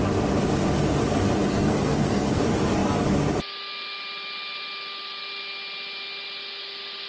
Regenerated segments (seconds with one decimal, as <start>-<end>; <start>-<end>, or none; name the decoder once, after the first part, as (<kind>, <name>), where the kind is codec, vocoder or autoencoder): 1.5-2.4 (codec, SNAC)